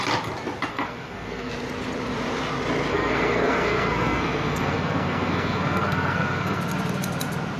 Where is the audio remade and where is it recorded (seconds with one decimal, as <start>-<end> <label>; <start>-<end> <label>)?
0.0-0.7 recorded; 0.7-1.5 remade; 1.5-2.9 recorded; 2.9-6.6 remade; 6.6-7.6 recorded